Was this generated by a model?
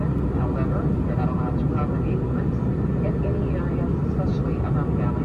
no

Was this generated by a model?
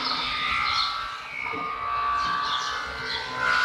no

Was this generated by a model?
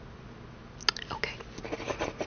no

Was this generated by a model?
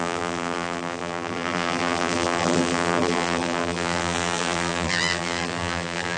yes